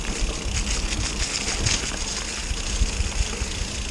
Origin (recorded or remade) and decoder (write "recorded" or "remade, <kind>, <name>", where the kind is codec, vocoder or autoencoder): recorded